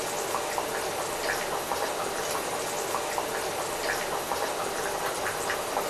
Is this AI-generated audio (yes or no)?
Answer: no